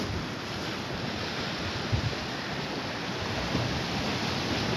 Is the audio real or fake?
real